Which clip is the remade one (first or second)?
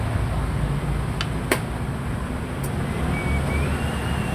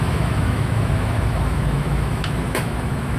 second